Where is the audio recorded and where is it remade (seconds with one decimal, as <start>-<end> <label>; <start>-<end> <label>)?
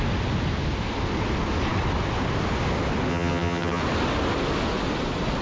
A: 0.0-3.1 recorded; 3.1-3.8 remade; 3.8-5.4 recorded